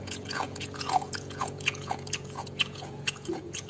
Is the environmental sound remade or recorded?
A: remade